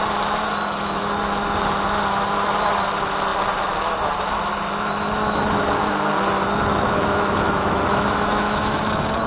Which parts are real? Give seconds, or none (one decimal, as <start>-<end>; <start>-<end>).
0.0-6.7; 8.8-9.3